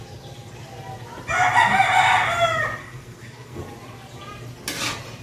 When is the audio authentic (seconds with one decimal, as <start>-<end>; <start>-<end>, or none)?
0.0-2.8; 3.6-5.2